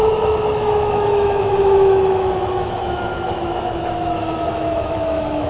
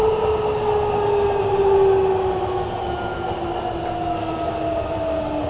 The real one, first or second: second